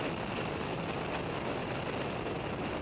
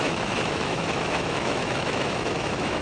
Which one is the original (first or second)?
first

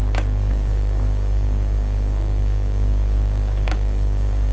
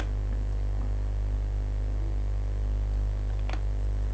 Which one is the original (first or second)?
second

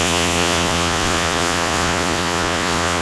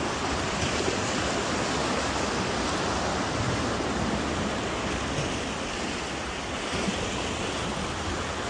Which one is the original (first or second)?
second